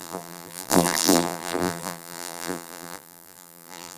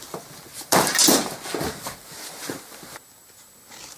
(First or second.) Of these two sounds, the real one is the second